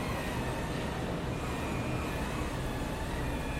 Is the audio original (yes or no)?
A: yes